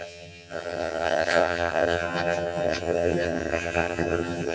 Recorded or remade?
remade